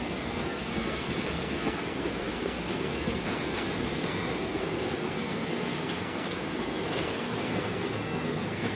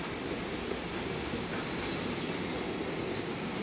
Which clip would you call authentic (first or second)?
second